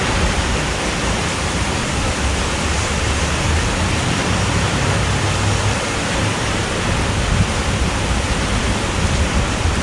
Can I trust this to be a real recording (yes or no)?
no